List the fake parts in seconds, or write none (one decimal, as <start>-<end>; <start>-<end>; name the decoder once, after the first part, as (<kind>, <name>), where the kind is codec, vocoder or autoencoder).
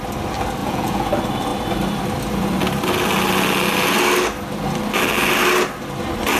0.6-1.1 (vocoder, Vocos)